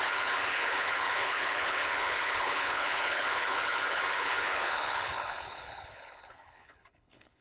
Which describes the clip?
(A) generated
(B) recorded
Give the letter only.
A